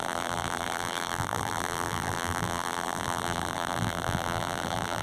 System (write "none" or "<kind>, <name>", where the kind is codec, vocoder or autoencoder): vocoder, BigVGAN v2